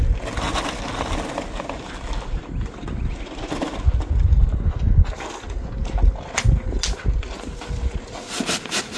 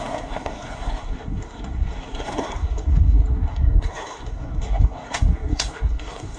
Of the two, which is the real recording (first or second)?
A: first